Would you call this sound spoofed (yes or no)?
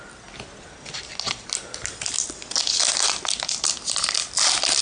no